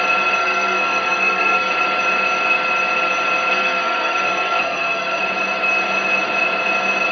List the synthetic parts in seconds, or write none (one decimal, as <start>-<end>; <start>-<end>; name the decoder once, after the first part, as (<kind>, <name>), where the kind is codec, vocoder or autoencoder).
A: 0.4-1.7 (codec, SNAC); 3.5-5.2